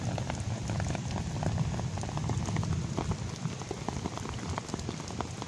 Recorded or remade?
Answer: recorded